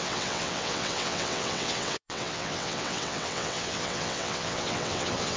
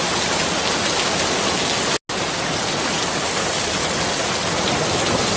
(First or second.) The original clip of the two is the second